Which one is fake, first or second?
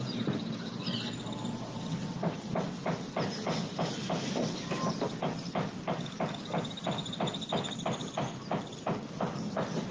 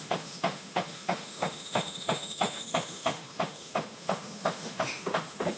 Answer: second